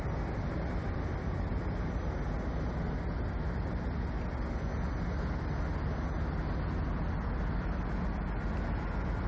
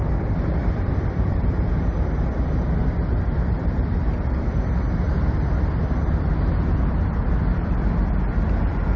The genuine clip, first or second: first